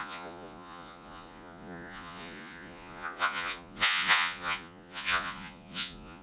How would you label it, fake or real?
fake